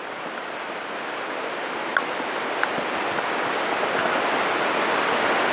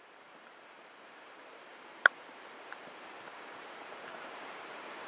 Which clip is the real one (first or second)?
first